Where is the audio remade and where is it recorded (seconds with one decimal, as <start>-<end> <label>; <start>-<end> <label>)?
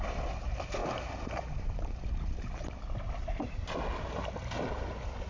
0.0-5.3 recorded